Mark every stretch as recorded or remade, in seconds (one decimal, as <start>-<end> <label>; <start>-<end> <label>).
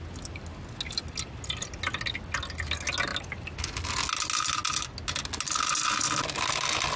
0.0-7.0 recorded